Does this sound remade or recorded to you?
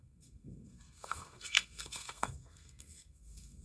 remade